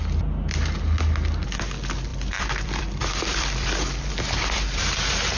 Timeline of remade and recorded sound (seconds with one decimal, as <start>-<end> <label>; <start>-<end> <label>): 0.0-2.1 recorded; 2.1-5.4 remade